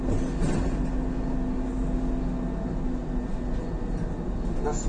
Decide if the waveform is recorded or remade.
recorded